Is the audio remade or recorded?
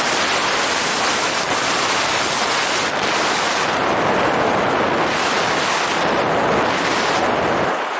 recorded